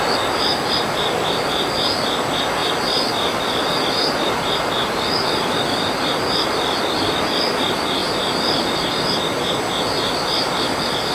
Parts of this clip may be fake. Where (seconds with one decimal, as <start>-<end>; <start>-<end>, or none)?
0.5-1.7; 2.6-7.2; 8.0-8.9